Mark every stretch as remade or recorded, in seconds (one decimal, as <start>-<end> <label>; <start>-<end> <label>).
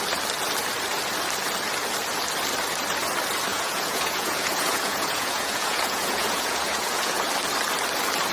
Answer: 0.0-3.5 recorded; 3.5-7.3 remade; 7.3-8.3 recorded